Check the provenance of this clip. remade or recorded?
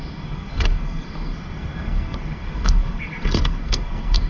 remade